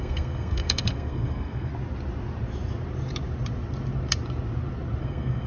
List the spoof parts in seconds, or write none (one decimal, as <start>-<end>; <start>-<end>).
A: 0.0-1.7; 5.0-5.5